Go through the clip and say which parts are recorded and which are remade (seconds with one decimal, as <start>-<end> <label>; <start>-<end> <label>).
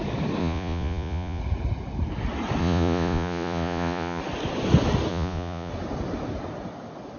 0.0-0.4 recorded; 0.4-1.4 remade; 1.4-2.6 recorded; 2.6-4.2 remade; 4.2-5.1 recorded; 5.1-5.7 remade; 5.7-7.2 recorded